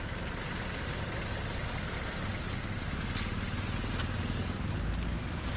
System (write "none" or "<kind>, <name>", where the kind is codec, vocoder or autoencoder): none